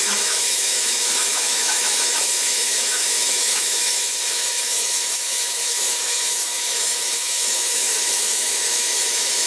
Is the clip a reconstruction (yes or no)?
yes